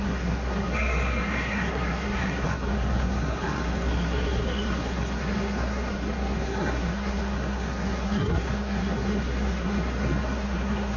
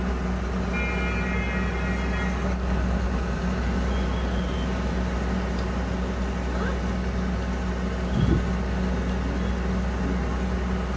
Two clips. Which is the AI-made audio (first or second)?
first